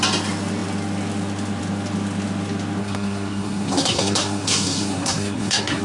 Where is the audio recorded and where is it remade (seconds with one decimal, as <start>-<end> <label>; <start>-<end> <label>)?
0.0-2.8 recorded; 2.8-5.8 remade